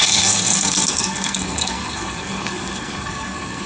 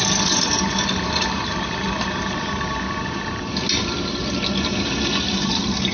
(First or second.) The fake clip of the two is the first